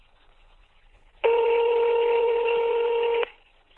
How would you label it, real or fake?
fake